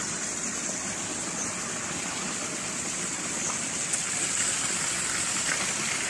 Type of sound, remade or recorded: remade